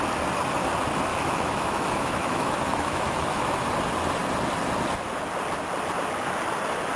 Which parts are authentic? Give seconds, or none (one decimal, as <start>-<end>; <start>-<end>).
0.0-1.1; 3.5-7.0